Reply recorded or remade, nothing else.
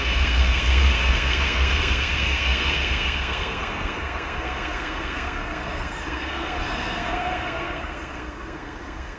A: remade